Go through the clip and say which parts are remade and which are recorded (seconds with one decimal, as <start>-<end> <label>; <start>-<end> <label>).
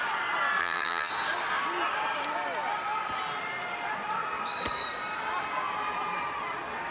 0.0-0.6 recorded; 0.6-1.1 remade; 1.1-6.9 recorded